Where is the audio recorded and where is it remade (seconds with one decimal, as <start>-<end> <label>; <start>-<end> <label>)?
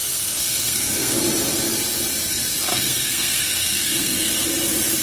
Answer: 0.0-1.2 remade; 1.2-2.7 recorded; 2.7-4.3 remade; 4.3-5.0 recorded